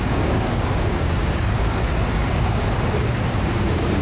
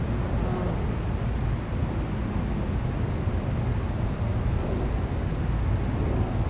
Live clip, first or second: second